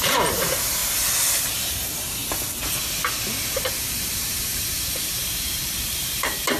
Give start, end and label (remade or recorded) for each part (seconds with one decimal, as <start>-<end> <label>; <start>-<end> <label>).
0.0-0.8 remade; 0.8-1.4 recorded; 1.4-2.2 remade; 2.2-3.9 recorded; 3.9-6.6 remade